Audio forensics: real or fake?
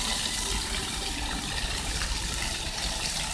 real